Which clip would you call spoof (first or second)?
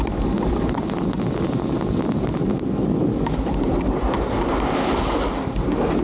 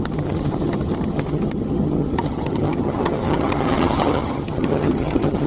second